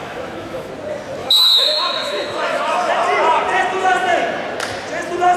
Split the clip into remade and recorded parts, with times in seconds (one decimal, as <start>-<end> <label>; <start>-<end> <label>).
0.0-0.7 remade; 0.7-1.2 recorded; 1.2-2.9 remade; 2.9-5.4 recorded